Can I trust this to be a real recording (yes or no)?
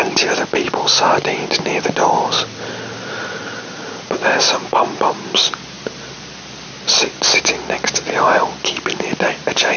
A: yes